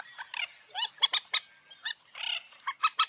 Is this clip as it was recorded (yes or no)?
yes